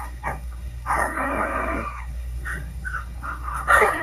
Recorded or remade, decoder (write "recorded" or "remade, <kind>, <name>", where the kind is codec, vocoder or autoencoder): remade, codec, SNAC